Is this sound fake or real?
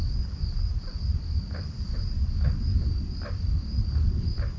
real